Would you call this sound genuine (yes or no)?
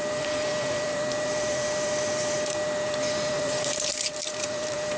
no